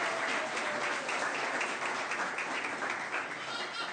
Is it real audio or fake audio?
real